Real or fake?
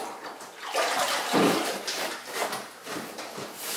fake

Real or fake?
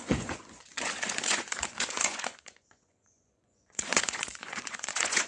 fake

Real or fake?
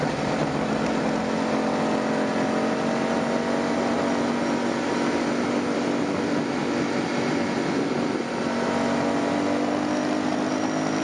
real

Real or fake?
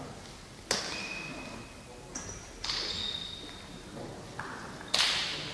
real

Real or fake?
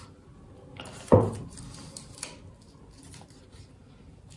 real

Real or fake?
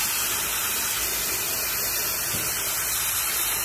real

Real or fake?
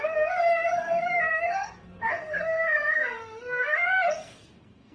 fake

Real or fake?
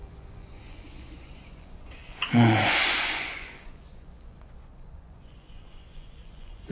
fake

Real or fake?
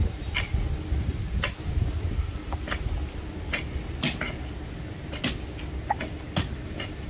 real